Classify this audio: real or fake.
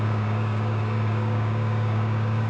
fake